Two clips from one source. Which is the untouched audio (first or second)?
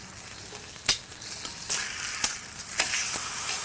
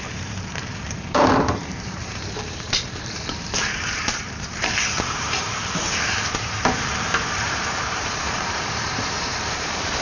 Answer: first